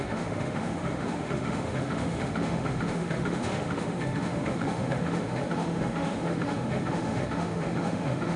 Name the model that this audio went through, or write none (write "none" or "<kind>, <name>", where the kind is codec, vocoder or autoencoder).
autoencoder, DAC-VAE